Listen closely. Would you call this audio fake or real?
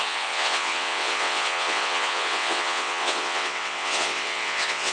fake